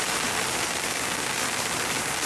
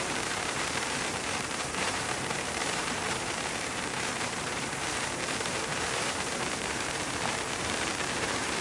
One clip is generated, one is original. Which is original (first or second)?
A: first